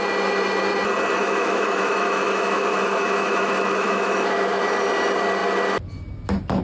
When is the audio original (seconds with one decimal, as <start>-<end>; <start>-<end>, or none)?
0.0-1.2; 4.6-6.6